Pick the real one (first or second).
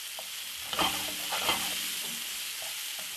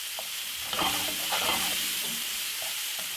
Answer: first